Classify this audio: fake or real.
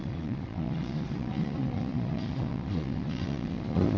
fake